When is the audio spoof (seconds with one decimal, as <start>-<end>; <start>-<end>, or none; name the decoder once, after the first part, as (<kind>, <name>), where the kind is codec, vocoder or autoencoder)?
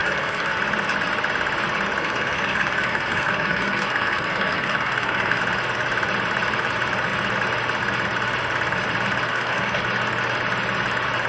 0.0-0.6 (codec, SNAC); 2.0-5.4; 9.3-9.8